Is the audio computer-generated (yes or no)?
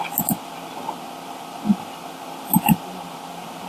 no